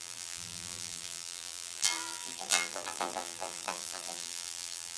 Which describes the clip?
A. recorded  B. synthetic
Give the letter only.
B